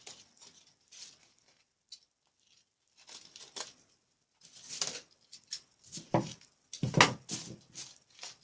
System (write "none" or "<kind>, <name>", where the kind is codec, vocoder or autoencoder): none